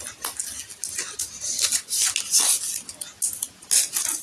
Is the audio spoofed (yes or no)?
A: no